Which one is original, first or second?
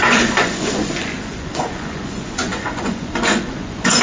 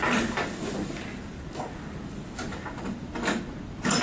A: second